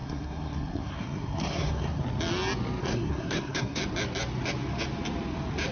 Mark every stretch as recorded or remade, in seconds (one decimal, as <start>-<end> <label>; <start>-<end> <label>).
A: 0.0-2.0 remade; 2.0-2.8 recorded; 2.8-3.8 remade; 3.8-5.7 recorded